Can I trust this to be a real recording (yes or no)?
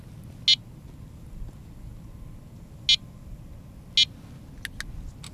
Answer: yes